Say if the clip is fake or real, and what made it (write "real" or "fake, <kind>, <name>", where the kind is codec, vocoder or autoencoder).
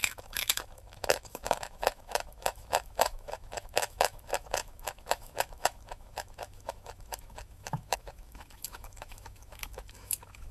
fake, autoencoder, DAC-VAE